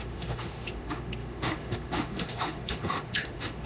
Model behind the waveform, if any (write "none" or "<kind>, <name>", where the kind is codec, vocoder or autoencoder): autoencoder, DAC-VAE